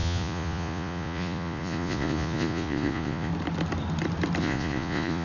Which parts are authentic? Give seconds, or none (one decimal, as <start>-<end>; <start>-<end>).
3.3-4.4

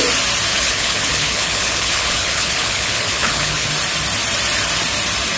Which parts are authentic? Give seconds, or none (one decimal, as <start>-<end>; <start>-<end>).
0.0-0.5; 3.7-5.4